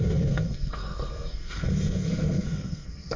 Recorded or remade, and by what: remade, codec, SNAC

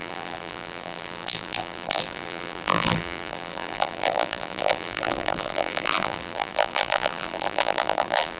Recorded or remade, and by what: remade, vocoder, BigVGAN v2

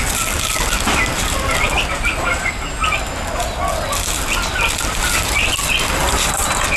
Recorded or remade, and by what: recorded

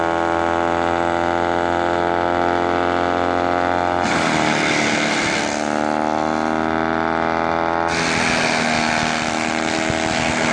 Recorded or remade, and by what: recorded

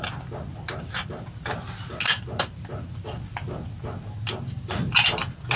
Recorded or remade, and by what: recorded